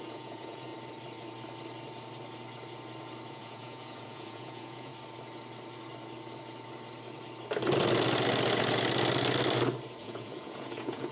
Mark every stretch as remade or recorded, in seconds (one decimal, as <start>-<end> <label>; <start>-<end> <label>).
0.0-0.7 remade; 0.7-3.3 recorded; 3.3-4.9 remade; 4.9-10.0 recorded; 10.0-11.1 remade